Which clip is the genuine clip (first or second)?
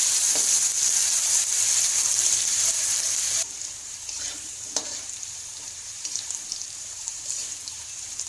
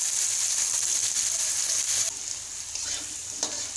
second